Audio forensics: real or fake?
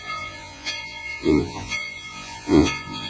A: fake